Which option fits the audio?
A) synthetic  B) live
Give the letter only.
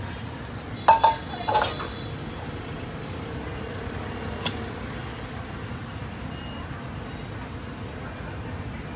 B